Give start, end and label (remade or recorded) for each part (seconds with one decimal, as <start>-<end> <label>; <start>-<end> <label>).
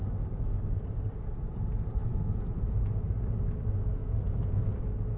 0.0-2.0 recorded; 2.0-3.1 remade; 3.1-4.0 recorded; 4.0-4.6 remade; 4.6-5.2 recorded